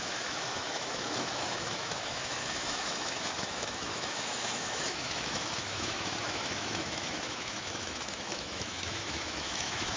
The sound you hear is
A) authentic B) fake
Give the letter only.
B